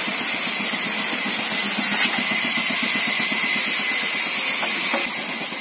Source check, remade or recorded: recorded